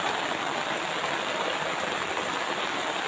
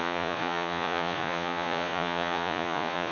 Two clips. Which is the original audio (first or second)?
first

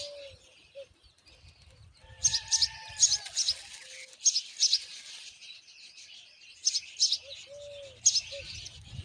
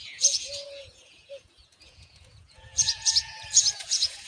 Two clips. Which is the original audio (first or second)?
first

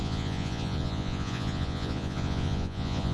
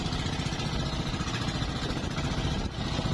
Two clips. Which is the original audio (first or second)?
second